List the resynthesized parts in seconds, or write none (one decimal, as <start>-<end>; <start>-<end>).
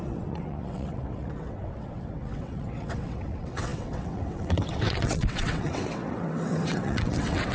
0.0-7.5